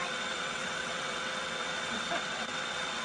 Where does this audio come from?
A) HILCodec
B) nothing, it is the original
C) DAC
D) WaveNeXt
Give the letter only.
D